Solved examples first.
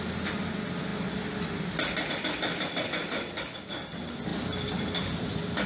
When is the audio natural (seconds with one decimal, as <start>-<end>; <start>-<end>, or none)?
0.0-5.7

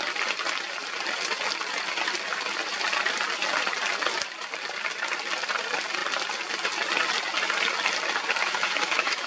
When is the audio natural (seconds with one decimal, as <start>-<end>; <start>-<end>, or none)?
0.0-8.4

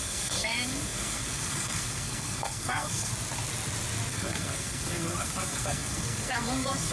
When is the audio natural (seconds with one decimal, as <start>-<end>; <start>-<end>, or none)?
3.1-4.1

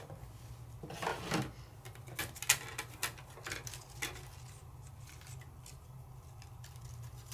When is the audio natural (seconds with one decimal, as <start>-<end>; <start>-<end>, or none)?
0.0-7.3